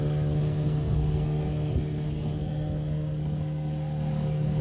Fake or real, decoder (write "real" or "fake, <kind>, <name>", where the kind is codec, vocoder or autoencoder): fake, codec, SNAC